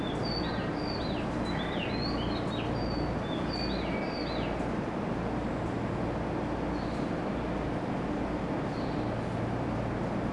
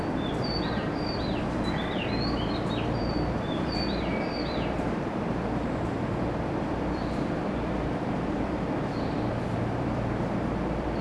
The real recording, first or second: first